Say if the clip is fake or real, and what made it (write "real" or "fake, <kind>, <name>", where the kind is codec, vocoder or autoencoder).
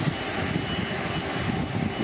real